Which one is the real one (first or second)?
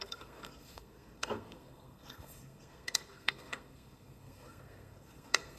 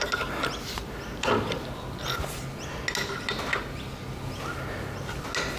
second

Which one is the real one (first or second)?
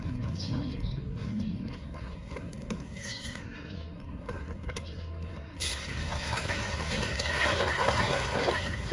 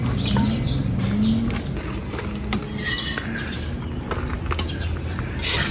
second